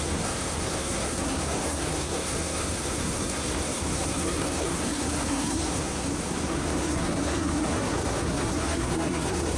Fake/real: fake